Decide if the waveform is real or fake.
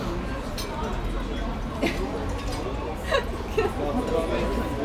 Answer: real